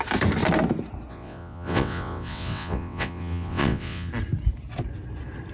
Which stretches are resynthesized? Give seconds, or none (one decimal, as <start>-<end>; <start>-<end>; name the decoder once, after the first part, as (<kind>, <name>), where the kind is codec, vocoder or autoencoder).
1.1-4.1 (vocoder, WaveNeXt)